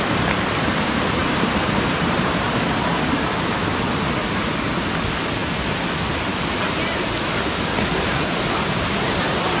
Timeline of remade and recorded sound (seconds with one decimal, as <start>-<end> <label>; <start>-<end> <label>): 0.0-1.2 recorded; 1.2-2.5 remade; 2.5-9.6 recorded